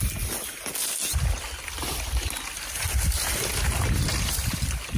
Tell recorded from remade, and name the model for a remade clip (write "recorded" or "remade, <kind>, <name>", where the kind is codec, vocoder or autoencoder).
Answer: recorded